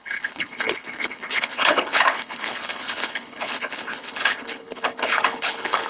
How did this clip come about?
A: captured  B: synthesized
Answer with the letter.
B